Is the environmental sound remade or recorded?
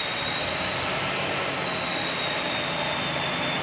recorded